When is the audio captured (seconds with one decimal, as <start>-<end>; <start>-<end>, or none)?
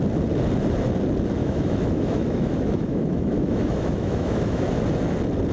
0.0-1.4; 4.7-5.5